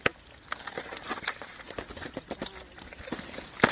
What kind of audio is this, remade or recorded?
recorded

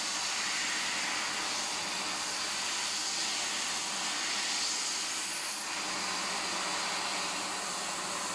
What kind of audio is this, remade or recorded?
recorded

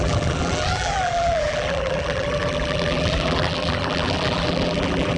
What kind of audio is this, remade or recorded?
remade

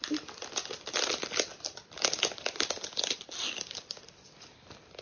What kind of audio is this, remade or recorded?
recorded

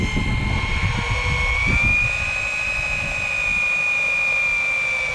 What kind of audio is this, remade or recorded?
recorded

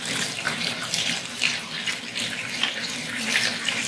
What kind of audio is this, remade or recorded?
remade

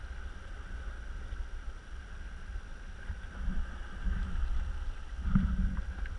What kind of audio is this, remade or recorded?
recorded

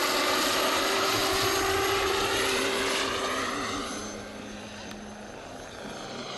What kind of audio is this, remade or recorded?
recorded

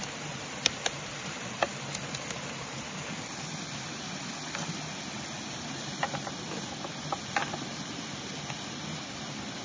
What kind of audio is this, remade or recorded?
recorded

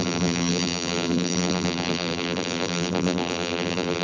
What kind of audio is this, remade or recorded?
remade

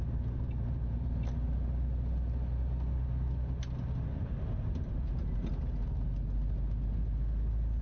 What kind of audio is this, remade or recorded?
recorded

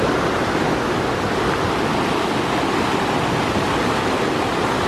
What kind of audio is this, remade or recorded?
recorded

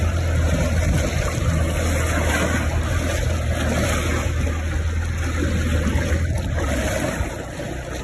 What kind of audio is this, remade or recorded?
recorded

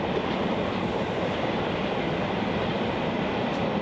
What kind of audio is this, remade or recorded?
remade